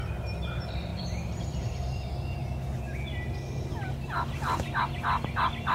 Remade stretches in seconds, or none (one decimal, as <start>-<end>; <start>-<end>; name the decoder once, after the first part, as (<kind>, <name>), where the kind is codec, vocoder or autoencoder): 0.9-1.9 (vocoder, BigVGAN v2)